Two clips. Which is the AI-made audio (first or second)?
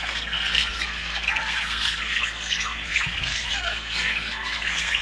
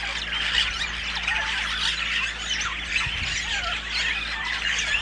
first